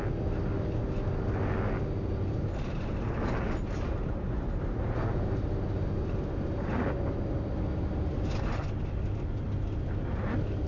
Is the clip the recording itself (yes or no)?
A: yes